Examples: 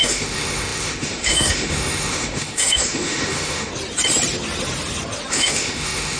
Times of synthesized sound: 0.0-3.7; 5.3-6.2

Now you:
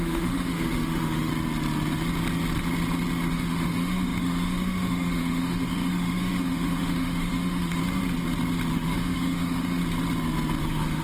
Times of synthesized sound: 0.0-1.3; 3.3-7.8; 8.7-9.8; 10.6-11.0

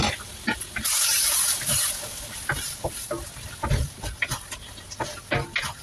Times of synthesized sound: none